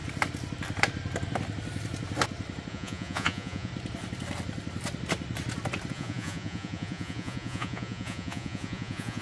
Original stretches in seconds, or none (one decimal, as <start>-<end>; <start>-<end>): 0.0-2.7; 3.7-5.9